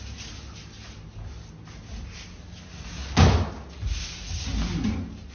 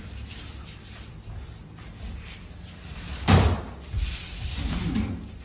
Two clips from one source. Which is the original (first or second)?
first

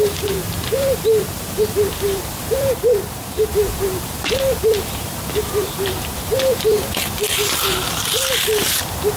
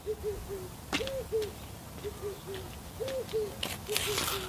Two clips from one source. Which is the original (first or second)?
second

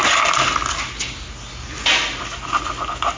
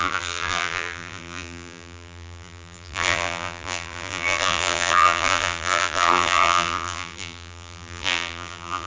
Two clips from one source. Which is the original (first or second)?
first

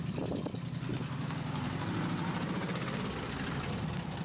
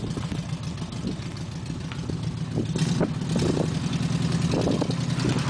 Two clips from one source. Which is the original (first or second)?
second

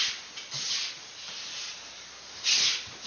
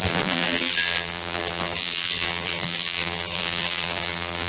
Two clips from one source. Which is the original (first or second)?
first